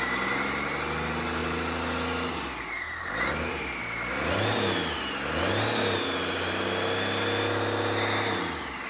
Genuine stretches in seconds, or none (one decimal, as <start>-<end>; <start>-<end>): 0.0-8.9